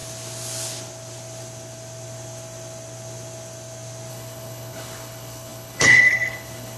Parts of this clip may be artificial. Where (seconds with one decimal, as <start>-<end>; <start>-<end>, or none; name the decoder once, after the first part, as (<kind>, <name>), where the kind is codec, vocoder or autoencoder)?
4.1-6.8 (codec, HILCodec)